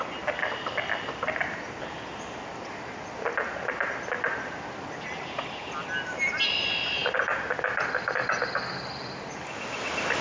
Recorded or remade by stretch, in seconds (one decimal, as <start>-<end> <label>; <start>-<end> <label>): 0.0-10.2 recorded